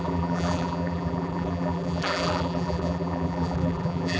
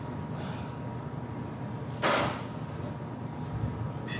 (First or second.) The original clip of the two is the second